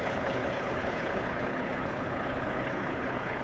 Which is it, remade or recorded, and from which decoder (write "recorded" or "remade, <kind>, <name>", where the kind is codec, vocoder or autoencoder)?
remade, codec, HILCodec